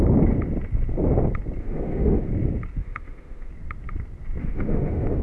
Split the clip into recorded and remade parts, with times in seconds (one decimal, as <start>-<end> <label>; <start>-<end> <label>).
0.0-1.6 recorded; 1.6-2.3 remade; 2.3-2.8 recorded; 2.8-3.5 remade; 3.5-4.4 recorded; 4.4-5.2 remade